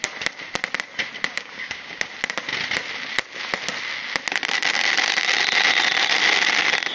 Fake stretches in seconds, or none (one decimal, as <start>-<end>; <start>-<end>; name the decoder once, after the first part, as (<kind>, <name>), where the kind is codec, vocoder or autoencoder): 1.3-2.1 (codec, DAC)